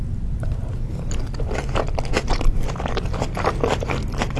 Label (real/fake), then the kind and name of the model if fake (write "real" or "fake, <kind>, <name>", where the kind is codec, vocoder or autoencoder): real